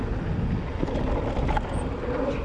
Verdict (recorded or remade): recorded